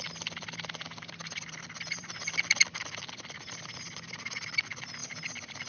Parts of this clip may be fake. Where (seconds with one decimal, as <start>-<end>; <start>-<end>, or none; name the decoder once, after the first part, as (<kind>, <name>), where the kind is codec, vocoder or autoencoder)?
1.2-4.6 (vocoder, BigVGAN v2); 5.0-5.7